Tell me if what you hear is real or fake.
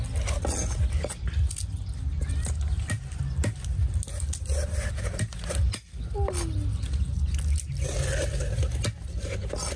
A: real